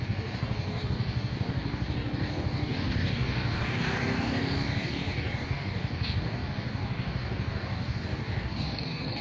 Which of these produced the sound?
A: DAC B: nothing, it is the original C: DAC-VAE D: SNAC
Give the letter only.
A